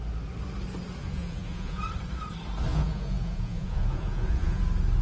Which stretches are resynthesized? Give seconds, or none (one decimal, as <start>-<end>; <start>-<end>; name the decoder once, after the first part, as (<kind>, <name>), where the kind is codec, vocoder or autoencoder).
1.0-1.8 (vocoder, Vocos); 2.7-4.6